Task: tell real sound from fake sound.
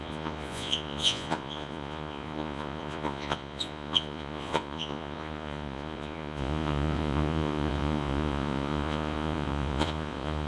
fake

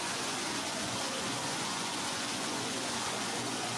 fake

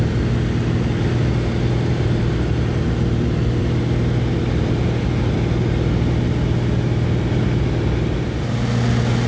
real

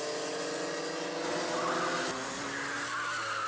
real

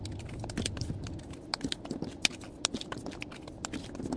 real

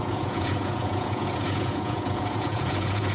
fake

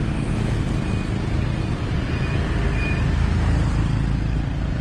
real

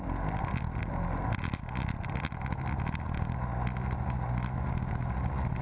real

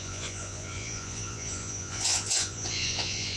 fake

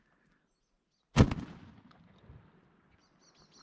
real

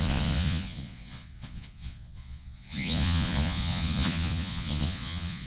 fake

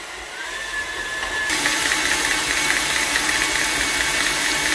real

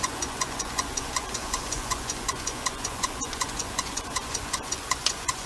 fake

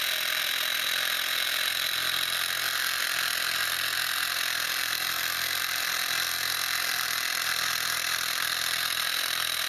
real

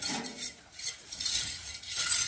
fake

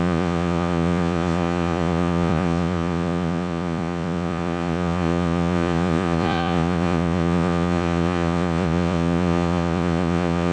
fake